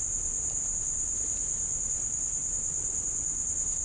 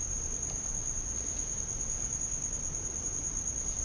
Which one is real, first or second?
second